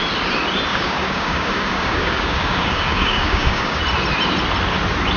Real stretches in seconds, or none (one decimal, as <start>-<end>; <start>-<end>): 0.0-0.7; 3.8-5.2